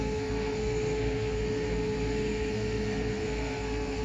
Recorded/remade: remade